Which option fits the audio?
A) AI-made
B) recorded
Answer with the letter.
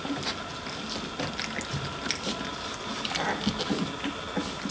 B